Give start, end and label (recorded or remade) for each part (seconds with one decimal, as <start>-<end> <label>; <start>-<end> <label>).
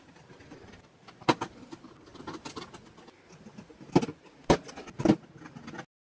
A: 0.0-6.1 recorded